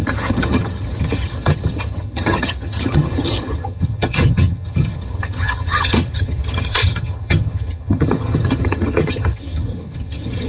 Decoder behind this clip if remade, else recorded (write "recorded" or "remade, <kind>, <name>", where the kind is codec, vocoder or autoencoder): remade, vocoder, HiFi-GAN